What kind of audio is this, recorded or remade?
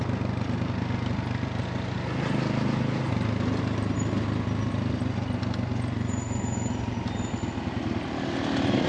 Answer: recorded